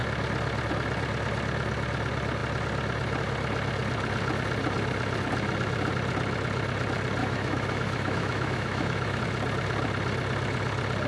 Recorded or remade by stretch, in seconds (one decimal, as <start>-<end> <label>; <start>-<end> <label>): 0.0-7.2 recorded; 7.2-9.2 remade; 9.2-11.1 recorded